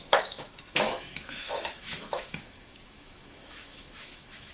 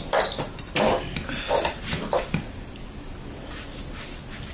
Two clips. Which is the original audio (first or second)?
second